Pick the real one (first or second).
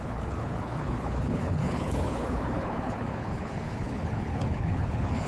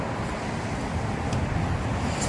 second